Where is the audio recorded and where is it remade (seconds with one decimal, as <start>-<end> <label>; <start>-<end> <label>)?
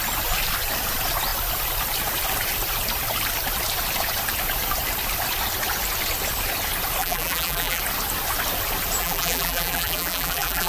0.0-7.0 recorded; 7.0-7.8 remade; 7.8-9.0 recorded; 9.0-10.7 remade